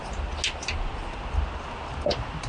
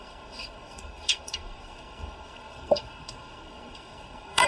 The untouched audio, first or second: first